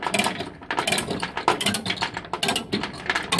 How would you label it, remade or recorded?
recorded